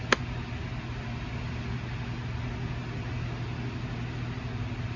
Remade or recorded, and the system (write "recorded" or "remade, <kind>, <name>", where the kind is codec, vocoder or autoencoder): recorded